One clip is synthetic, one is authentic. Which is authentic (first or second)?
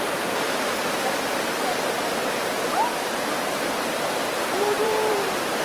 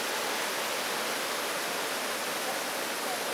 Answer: second